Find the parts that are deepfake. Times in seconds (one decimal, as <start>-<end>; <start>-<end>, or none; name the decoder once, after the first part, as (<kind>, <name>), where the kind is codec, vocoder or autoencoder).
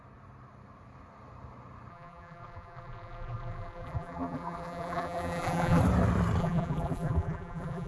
1.9-5.8 (vocoder, BigVGAN v2); 6.4-7.9